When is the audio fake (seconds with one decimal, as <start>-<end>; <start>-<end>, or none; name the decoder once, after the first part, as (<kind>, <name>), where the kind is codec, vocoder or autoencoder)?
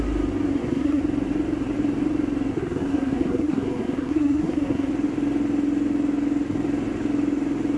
0.5-1.0 (codec, SNAC); 2.5-4.9